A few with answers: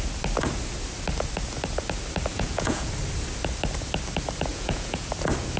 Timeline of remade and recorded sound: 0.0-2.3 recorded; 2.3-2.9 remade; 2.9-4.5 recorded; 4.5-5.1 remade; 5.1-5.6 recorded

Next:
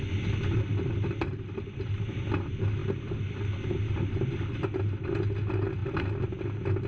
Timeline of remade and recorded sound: 0.0-6.9 recorded

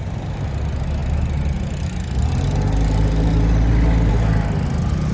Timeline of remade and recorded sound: 0.0-5.1 recorded

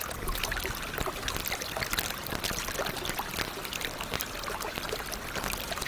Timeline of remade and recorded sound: 0.0-5.9 recorded

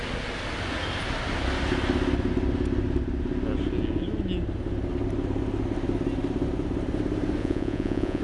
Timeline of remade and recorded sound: 0.0-7.4 recorded; 7.4-8.2 remade